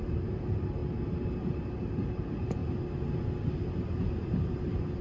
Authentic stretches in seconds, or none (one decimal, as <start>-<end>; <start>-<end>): 0.8-1.8; 2.6-3.6